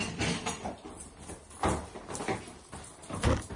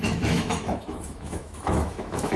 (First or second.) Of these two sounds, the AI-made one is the second